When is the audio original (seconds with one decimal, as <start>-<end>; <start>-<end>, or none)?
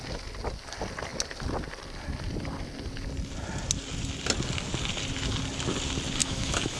0.0-6.2